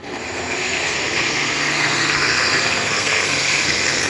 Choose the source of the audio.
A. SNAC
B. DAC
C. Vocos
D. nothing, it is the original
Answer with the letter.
A